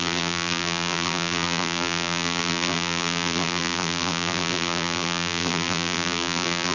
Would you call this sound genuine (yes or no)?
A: no